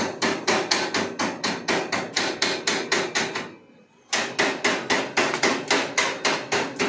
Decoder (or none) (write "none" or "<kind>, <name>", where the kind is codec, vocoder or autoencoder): none